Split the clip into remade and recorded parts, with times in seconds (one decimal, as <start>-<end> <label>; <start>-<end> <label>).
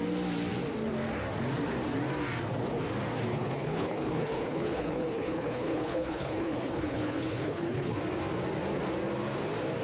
0.0-3.3 recorded; 3.3-8.0 remade; 8.0-9.8 recorded